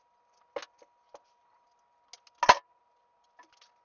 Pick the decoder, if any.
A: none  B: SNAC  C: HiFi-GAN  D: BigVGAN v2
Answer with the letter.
A